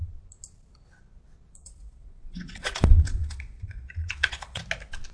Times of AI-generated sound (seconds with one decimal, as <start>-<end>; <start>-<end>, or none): 1.6-4.6